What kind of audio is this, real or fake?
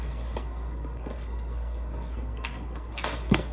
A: fake